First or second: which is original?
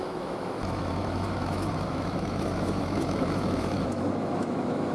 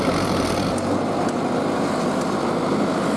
second